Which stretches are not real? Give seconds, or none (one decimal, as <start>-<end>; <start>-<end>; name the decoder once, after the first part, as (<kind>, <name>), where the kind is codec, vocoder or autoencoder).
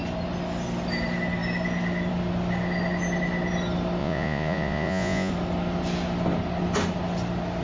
4.0-5.3 (vocoder, Vocos)